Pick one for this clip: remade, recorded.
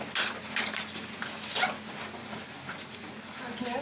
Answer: recorded